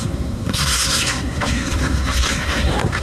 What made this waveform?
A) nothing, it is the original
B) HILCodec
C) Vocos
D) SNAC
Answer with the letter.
D